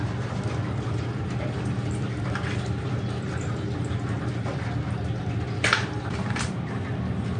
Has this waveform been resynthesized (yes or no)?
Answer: yes